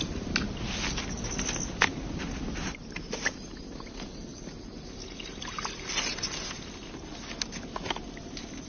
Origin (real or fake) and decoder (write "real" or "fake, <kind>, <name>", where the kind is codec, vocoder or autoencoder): real